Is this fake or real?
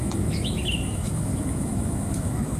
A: fake